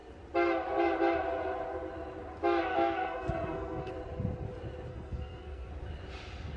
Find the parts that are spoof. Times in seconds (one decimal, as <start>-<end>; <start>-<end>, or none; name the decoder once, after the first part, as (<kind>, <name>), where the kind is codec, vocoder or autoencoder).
2.7-3.9 (codec, SNAC); 4.9-5.7